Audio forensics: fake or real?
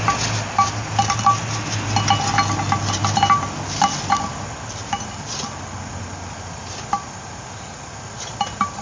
real